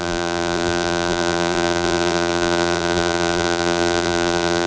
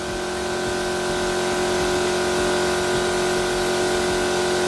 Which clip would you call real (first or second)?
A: second